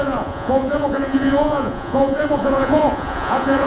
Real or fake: fake